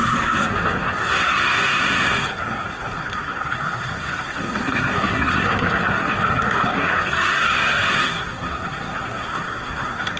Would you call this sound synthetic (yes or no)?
yes